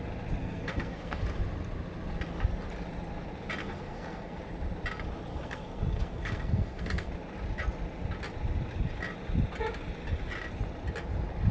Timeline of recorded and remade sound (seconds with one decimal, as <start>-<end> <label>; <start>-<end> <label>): 0.0-0.4 recorded; 0.4-1.2 remade; 1.2-3.6 recorded; 3.6-4.4 remade; 4.4-5.3 recorded; 5.3-7.1 remade; 7.1-11.5 recorded